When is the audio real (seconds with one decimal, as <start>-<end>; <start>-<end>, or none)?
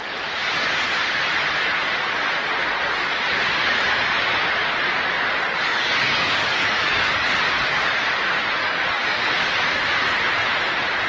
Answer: 0.0-5.7; 7.4-8.6; 9.3-11.1